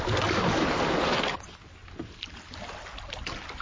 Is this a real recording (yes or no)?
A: yes